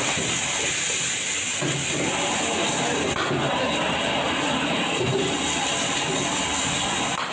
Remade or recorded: recorded